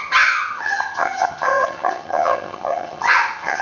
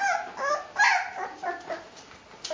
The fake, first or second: first